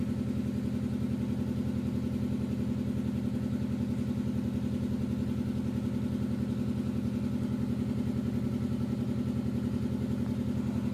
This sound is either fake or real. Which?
real